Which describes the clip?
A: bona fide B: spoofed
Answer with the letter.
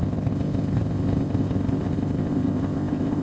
B